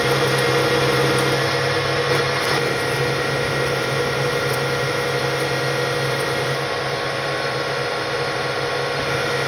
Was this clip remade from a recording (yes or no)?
no